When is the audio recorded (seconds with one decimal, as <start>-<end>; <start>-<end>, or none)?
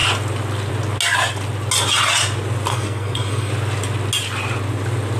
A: 0.0-2.7; 3.5-5.2